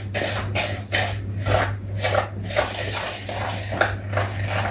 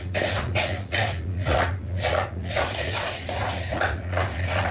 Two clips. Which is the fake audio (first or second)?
second